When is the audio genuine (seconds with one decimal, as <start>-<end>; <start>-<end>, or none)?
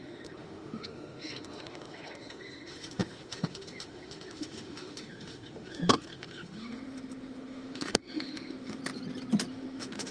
8.8-9.5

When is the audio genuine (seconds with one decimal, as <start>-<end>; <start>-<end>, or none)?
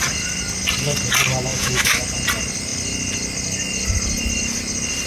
0.0-1.5; 2.0-5.1